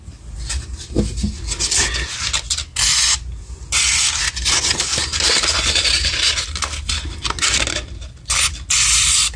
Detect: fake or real real